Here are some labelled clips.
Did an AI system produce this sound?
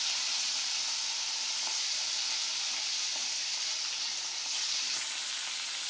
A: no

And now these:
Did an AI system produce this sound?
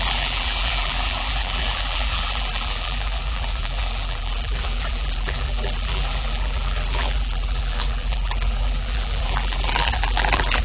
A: yes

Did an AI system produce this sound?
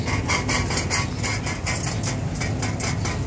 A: no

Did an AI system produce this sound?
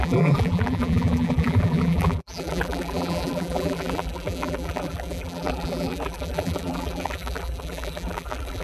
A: yes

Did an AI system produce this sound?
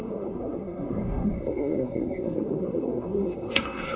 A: yes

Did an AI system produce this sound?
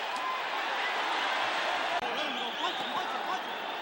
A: yes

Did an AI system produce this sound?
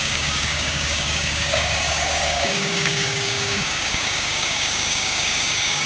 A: yes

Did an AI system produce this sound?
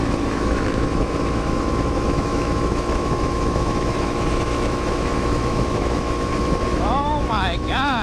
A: yes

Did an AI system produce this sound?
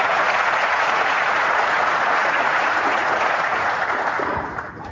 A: yes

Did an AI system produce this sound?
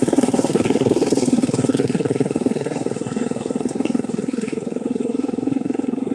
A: yes